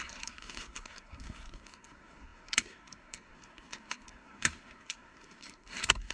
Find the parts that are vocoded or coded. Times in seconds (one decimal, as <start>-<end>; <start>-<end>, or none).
0.0-6.1